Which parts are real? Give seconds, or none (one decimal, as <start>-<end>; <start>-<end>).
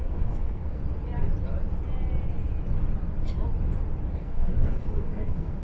0.8-4.1